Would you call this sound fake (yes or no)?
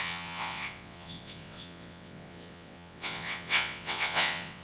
yes